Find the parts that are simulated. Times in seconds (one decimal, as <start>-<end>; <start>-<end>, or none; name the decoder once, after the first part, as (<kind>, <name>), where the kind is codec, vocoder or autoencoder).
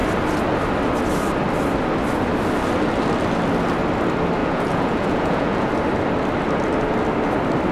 4.4-5.7 (vocoder, Vocos)